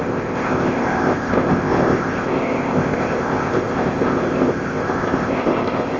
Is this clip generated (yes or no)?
yes